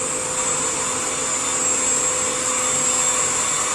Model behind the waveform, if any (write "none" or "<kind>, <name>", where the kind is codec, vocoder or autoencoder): none